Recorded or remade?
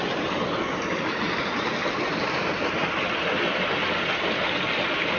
recorded